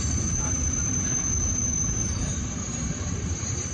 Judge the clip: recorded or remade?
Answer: remade